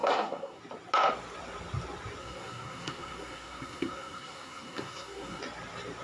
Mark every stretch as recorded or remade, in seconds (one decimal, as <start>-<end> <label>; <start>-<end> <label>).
0.0-0.6 remade; 0.6-2.2 recorded; 2.2-5.4 remade; 5.4-6.0 recorded